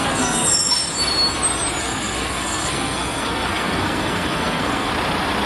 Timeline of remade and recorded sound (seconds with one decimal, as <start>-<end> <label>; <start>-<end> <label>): 0.0-0.7 remade; 0.7-1.8 recorded; 1.8-4.9 remade; 4.9-5.5 recorded